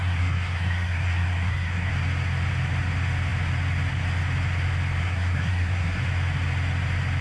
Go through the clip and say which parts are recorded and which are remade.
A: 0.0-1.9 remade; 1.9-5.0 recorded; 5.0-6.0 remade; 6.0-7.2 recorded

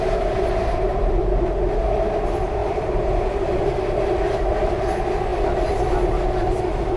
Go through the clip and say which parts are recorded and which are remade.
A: 0.0-2.6 recorded; 2.6-4.2 remade; 4.2-5.3 recorded; 5.3-6.6 remade; 6.6-7.0 recorded

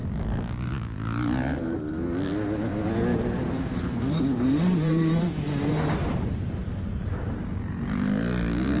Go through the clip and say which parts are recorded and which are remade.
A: 0.0-3.1 recorded; 3.1-6.4 remade; 6.4-8.8 recorded

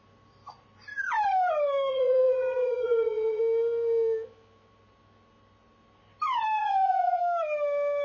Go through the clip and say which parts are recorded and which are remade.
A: 0.0-1.9 recorded; 1.9-3.4 remade; 3.4-6.6 recorded; 6.6-7.2 remade; 7.2-8.0 recorded

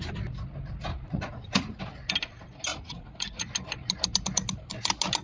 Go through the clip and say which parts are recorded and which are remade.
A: 0.0-0.9 recorded; 0.9-1.8 remade; 1.8-2.7 recorded; 2.7-3.5 remade; 3.5-5.2 recorded